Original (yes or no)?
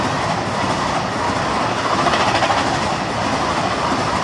yes